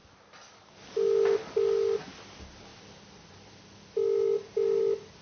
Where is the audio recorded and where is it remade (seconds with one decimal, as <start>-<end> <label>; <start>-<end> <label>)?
0.0-2.7 recorded; 2.7-4.8 remade; 4.8-5.2 recorded